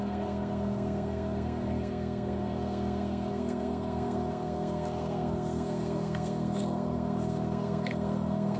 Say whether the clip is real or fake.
fake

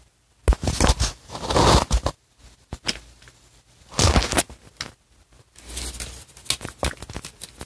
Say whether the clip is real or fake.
real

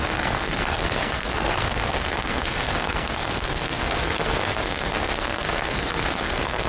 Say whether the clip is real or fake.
fake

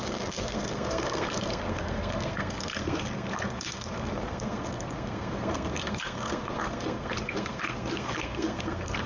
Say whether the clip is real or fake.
fake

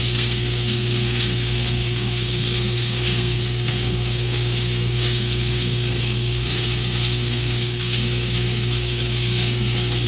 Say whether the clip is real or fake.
fake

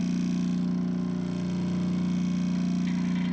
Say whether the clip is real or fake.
real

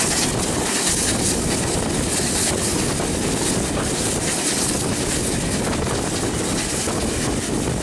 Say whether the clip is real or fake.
real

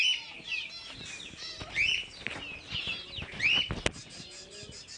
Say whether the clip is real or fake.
real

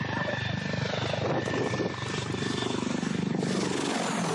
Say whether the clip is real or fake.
real